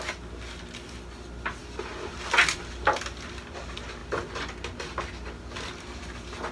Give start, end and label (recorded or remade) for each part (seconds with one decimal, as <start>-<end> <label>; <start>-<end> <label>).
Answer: 0.0-6.5 recorded